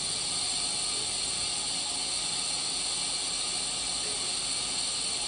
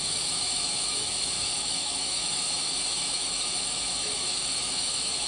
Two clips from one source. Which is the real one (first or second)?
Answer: first